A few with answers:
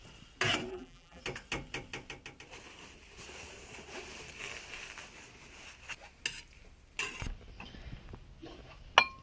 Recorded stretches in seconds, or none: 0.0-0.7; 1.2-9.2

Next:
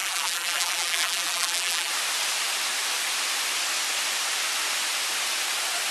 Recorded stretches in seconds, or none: 1.9-5.9

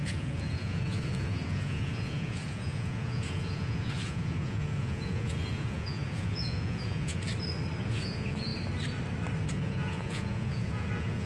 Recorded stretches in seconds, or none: 7.3-7.8; 8.5-9.5